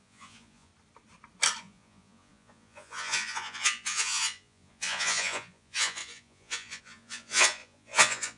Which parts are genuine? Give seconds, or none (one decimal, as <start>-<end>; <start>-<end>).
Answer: 0.7-1.6